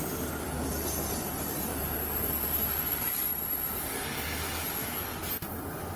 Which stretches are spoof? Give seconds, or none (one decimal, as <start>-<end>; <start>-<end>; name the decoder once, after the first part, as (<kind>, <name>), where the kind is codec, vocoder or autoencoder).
none